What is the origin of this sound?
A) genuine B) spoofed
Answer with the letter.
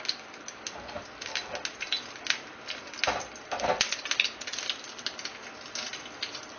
A